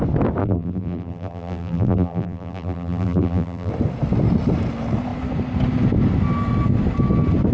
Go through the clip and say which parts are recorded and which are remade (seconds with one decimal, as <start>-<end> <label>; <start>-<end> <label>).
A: 0.0-0.4 recorded; 0.4-3.7 remade; 3.7-7.5 recorded